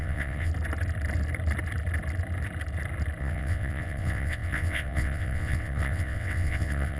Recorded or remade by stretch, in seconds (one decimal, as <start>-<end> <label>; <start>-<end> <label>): 0.0-0.5 remade; 0.5-3.2 recorded; 3.2-7.0 remade